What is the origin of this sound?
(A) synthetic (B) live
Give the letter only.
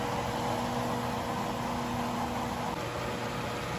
B